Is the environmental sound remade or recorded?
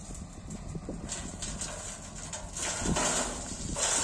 recorded